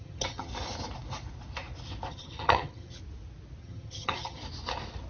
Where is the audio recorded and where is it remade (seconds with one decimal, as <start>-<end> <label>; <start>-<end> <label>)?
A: 0.0-0.5 remade; 0.5-2.1 recorded; 2.1-3.0 remade; 3.0-3.6 recorded; 3.6-4.4 remade; 4.4-5.1 recorded